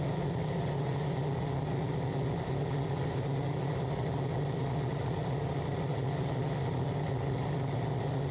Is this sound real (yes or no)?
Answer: yes